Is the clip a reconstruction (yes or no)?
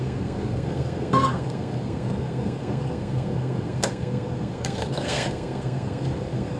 yes